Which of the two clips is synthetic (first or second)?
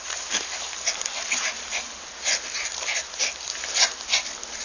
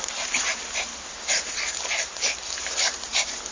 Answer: second